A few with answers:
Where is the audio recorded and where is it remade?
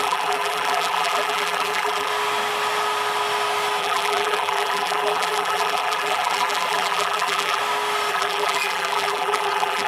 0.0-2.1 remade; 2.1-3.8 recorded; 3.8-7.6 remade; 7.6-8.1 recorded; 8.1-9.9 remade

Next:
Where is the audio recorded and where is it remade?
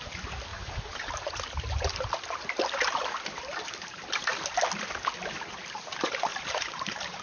0.0-0.5 recorded; 0.5-1.1 remade; 1.1-6.3 recorded; 6.3-7.2 remade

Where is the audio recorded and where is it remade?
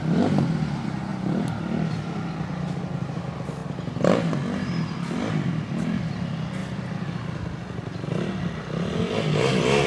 0.0-1.1 recorded; 1.1-1.9 remade; 1.9-6.6 recorded; 6.6-7.2 remade; 7.2-9.9 recorded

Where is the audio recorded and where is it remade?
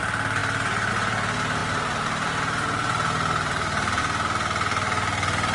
0.0-1.6 recorded; 1.6-4.0 remade; 4.0-5.5 recorded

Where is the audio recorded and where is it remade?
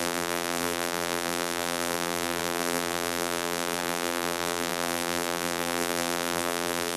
0.0-7.0 remade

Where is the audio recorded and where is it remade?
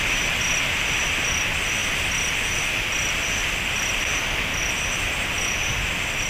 0.0-1.8 recorded; 1.8-2.5 remade; 2.5-3.4 recorded; 3.4-4.6 remade; 4.6-5.6 recorded; 5.6-6.3 remade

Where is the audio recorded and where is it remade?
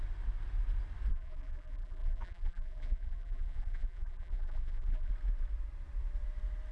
0.0-1.1 recorded; 1.1-5.1 remade; 5.1-6.7 recorded